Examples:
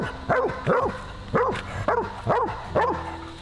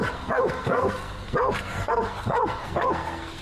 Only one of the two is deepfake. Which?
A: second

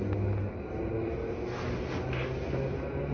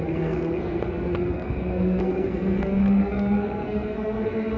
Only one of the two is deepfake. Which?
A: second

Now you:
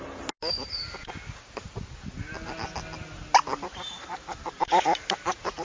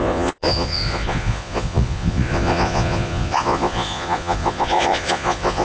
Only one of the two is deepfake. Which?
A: second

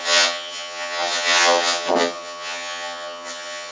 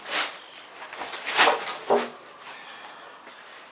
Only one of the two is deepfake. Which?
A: first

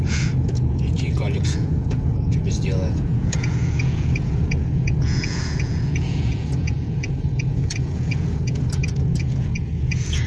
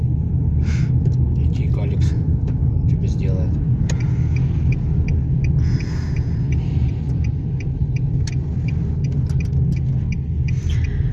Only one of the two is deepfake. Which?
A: first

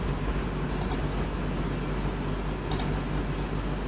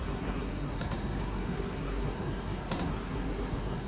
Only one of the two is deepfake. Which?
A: second